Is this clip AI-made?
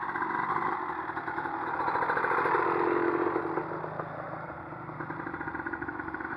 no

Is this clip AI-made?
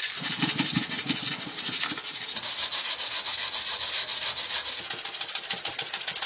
no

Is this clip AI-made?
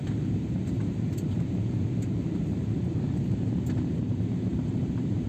yes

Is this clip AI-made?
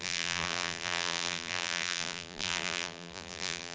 yes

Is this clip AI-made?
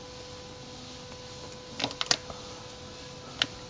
no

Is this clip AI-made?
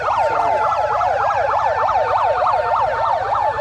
yes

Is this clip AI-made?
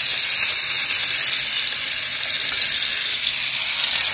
no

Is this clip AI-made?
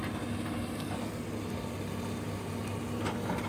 no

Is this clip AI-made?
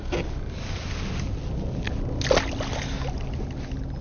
no